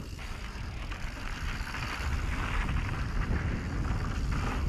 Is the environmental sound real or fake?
real